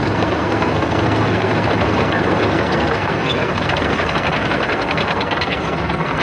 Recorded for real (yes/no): no